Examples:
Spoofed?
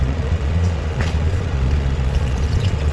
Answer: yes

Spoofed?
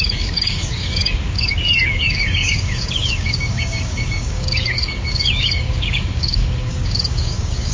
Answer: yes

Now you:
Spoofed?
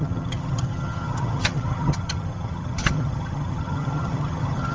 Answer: yes